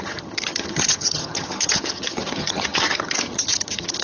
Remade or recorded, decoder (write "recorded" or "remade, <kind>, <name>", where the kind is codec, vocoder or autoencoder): remade, vocoder, HiFi-GAN